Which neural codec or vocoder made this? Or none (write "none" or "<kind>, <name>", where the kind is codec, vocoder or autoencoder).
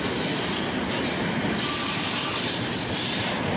none